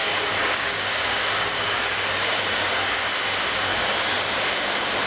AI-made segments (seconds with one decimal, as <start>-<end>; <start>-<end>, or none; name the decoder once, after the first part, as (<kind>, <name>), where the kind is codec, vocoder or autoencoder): 0.0-3.1 (codec, DAC); 3.7-4.4